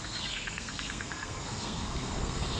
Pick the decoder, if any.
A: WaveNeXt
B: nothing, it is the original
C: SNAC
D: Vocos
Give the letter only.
C